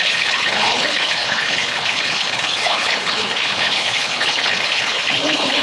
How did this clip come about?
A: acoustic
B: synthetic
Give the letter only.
B